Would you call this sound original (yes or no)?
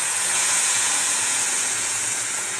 no